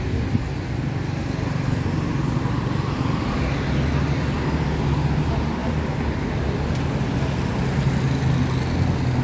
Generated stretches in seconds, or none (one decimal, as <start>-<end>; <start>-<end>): none